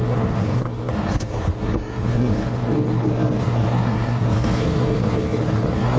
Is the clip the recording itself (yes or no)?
no